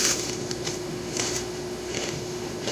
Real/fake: fake